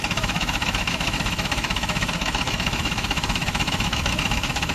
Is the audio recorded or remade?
remade